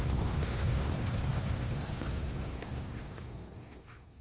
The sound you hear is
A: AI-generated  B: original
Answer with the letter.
A